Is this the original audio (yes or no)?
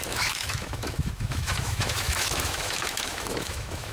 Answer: no